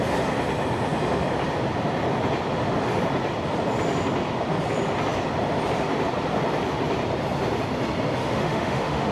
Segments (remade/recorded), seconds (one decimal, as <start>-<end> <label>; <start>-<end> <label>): 0.0-8.2 recorded; 8.2-9.1 remade